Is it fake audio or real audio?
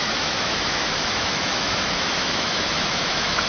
fake